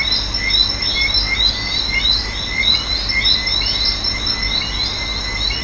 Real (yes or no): yes